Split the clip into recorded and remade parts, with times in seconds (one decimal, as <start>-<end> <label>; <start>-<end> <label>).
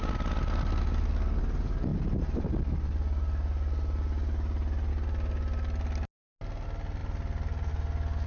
0.0-8.3 recorded